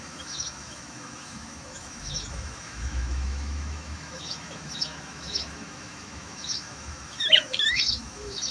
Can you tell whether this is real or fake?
fake